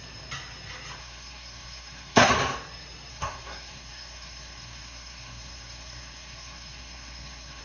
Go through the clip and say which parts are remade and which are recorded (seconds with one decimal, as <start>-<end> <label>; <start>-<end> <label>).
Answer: 0.0-1.0 recorded; 1.0-2.3 remade; 2.3-3.1 recorded; 3.1-7.6 remade